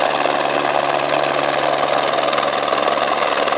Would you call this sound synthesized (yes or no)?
no